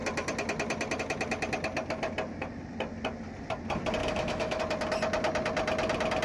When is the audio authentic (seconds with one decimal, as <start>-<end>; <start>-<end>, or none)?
0.0-4.0; 4.6-6.2